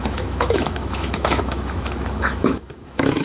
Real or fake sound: fake